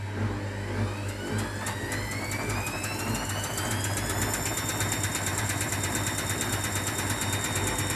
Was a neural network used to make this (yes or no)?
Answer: no